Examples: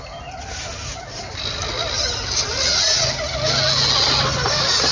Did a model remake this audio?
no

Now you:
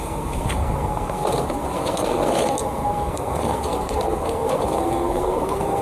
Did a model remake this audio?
yes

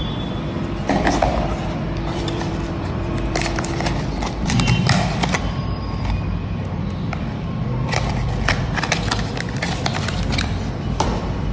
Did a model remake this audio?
yes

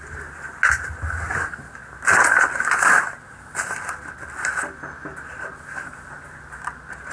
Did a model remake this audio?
no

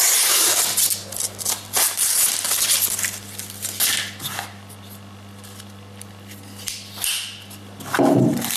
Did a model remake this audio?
no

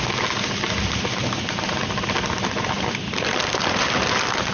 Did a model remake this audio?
no